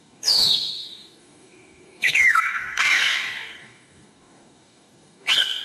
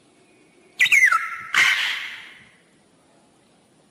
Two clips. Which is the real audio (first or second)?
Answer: second